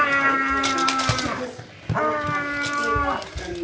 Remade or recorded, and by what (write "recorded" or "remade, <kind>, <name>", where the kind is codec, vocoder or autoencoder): recorded